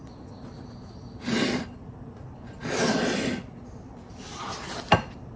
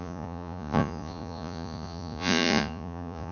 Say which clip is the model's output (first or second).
second